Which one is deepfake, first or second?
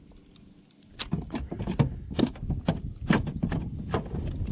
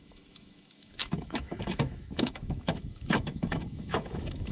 second